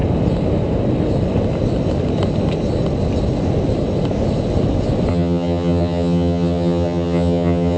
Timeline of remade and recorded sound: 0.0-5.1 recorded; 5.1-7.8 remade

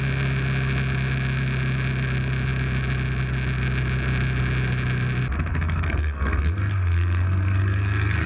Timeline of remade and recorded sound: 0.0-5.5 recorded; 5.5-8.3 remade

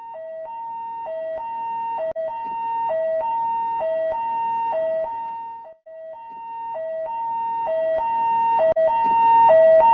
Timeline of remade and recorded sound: 0.0-9.9 recorded

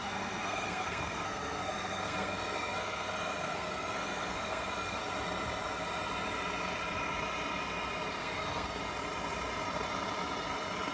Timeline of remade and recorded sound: 0.0-5.0 remade; 5.0-8.2 recorded; 8.2-8.8 remade; 8.8-10.9 recorded

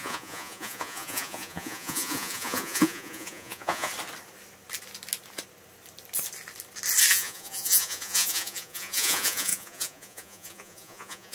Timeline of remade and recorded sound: 0.0-3.9 remade; 3.9-7.1 recorded; 7.1-11.3 remade

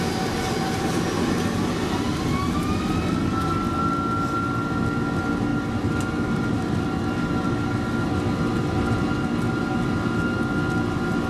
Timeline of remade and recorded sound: 0.0-5.5 recorded; 5.5-8.1 remade; 8.1-11.3 recorded

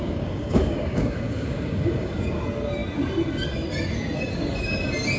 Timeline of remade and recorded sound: 0.0-2.4 remade; 2.4-5.2 recorded

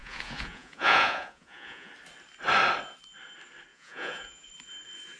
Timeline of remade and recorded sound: 0.0-1.9 remade; 1.9-3.7 recorded; 3.7-4.5 remade; 4.5-5.2 recorded